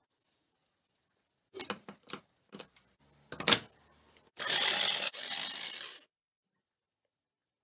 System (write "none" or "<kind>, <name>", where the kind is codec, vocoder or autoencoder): none